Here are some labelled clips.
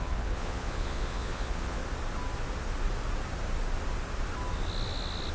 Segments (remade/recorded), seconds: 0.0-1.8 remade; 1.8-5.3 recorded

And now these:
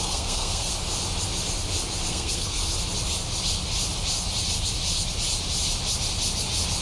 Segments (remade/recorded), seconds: 0.0-0.7 remade; 0.7-2.1 recorded; 2.1-2.6 remade; 2.6-6.8 recorded